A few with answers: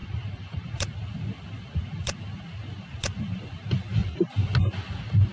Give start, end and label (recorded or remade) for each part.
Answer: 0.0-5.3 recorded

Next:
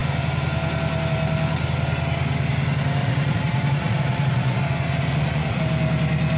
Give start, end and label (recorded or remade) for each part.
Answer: 0.0-3.0 recorded; 3.0-4.6 remade; 4.6-5.1 recorded; 5.1-5.6 remade; 5.6-6.4 recorded

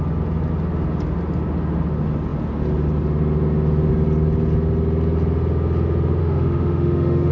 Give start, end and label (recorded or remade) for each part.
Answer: 0.0-6.2 recorded; 6.2-7.3 remade

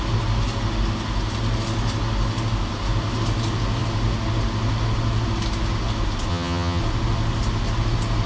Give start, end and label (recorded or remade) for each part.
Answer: 0.0-6.3 recorded; 6.3-6.8 remade; 6.8-8.3 recorded

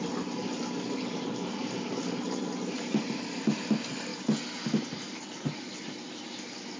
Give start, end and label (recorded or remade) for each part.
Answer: 0.0-6.8 recorded

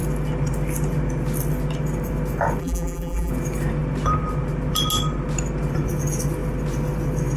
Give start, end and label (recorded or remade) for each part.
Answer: 0.0-2.6 recorded; 2.6-3.3 remade; 3.3-7.4 recorded

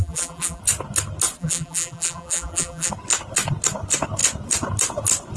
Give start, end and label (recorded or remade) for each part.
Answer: 0.0-0.6 remade; 0.6-1.4 recorded; 1.4-2.9 remade; 2.9-5.4 recorded